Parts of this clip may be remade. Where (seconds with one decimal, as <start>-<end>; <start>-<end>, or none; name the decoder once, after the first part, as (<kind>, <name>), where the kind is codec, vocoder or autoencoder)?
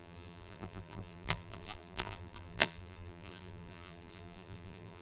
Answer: 0.0-5.0 (vocoder, BigVGAN v2)